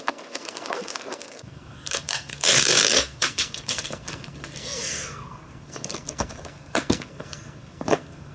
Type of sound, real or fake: fake